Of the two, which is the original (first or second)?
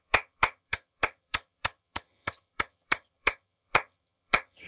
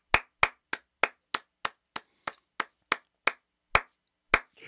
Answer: second